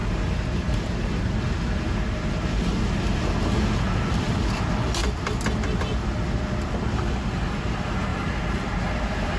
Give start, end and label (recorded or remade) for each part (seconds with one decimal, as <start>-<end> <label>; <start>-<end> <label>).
0.0-1.3 remade; 1.3-8.1 recorded; 8.1-8.7 remade; 8.7-9.4 recorded